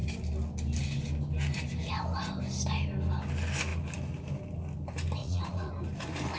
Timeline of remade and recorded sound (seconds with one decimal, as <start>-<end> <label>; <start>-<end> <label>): 0.0-5.2 recorded; 5.2-5.7 remade; 5.7-6.4 recorded